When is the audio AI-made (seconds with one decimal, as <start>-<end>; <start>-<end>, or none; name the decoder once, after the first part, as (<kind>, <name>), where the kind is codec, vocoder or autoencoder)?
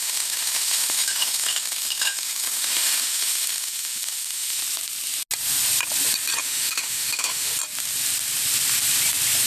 0.0-4.6 (autoencoder, DAC-VAE); 6.4-7.5